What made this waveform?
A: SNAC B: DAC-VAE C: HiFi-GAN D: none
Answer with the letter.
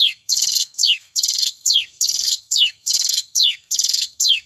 A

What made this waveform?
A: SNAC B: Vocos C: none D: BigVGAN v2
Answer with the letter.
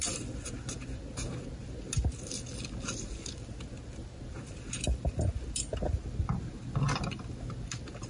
C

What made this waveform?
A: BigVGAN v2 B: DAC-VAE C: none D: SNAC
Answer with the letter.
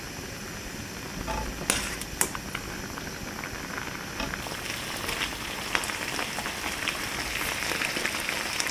C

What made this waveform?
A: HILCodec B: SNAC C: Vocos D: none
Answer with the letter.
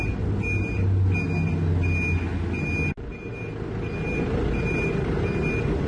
D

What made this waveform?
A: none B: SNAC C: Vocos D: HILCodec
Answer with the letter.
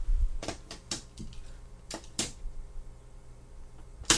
A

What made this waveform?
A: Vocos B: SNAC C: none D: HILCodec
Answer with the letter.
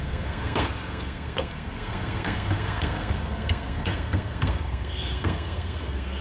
B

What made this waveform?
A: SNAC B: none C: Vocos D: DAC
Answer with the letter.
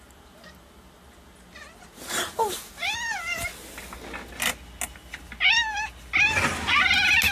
B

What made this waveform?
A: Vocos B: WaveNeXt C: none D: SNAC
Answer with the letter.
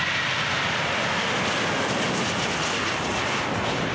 C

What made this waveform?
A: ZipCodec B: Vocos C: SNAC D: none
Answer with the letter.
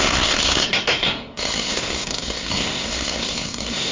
C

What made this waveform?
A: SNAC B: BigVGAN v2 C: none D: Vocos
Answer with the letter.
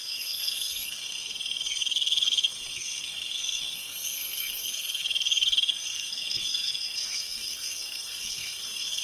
A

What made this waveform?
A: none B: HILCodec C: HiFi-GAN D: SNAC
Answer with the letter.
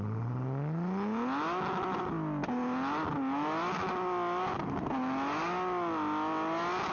A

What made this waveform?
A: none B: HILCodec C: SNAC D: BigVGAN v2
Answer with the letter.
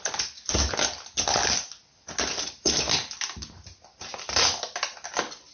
A